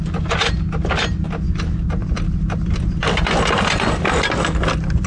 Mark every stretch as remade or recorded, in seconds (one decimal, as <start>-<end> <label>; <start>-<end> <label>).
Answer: 0.0-2.0 recorded; 2.0-3.1 remade; 3.1-5.1 recorded